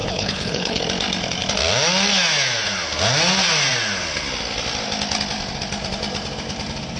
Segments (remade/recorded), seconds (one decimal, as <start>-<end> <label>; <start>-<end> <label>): 0.0-0.8 remade; 0.8-7.0 recorded